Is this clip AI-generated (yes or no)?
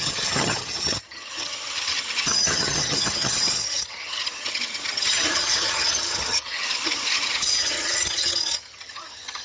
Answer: yes